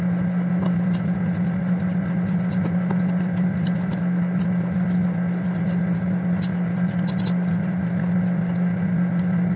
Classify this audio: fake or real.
real